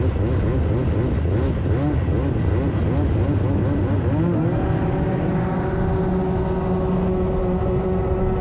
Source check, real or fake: real